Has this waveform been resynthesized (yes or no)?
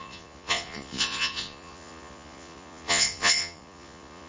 yes